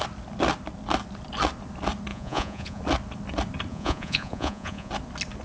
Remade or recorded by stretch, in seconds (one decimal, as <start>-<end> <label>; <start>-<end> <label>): 0.0-2.1 recorded; 2.1-2.8 remade; 2.8-3.7 recorded; 3.7-4.9 remade; 4.9-5.4 recorded